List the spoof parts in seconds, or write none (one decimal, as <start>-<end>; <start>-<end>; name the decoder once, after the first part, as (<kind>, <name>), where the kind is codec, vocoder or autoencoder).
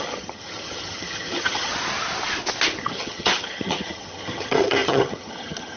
0.0-1.7 (vocoder, HiFi-GAN); 2.8-5.8